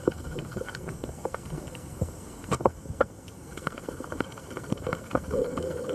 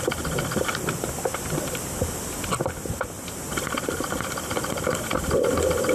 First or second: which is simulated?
first